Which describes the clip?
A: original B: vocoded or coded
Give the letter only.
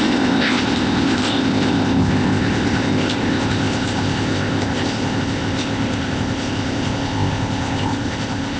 B